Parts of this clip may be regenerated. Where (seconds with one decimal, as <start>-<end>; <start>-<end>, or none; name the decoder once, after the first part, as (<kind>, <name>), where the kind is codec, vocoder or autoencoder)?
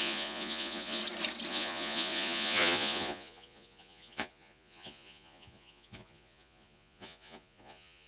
0.0-1.0 (vocoder, Vocos); 1.5-8.1